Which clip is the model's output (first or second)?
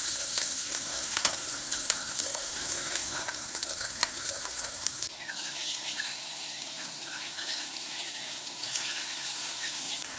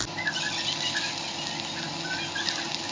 first